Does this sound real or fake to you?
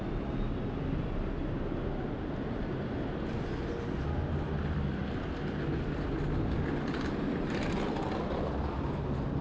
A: real